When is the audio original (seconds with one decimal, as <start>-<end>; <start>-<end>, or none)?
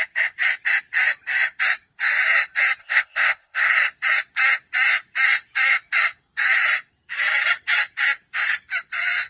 0.0-2.8; 3.7-9.3